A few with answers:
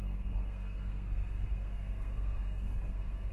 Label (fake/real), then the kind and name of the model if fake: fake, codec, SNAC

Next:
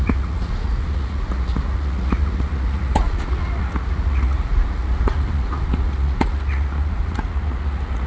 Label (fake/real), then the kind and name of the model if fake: fake, vocoder, Vocos